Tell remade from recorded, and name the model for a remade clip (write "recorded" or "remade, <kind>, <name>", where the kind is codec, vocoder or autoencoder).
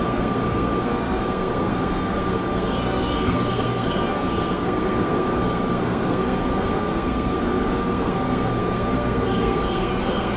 remade, codec, SNAC